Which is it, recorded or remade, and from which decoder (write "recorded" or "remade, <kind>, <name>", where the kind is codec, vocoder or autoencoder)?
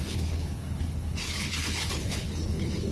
remade, codec, HILCodec